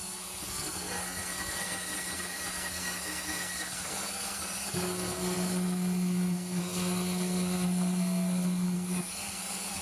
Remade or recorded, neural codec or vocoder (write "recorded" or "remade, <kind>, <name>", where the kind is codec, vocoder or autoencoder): remade, codec, SNAC